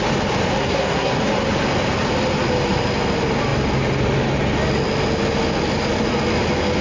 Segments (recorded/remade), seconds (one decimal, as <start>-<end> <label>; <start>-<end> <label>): 0.0-0.6 recorded; 0.6-1.2 remade; 1.2-6.8 recorded